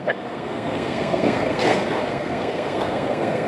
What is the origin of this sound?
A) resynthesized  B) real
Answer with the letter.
A